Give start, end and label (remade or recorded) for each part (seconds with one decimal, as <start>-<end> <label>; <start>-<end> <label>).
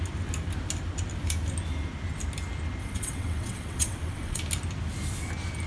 0.0-2.8 recorded; 2.8-4.4 remade; 4.4-5.7 recorded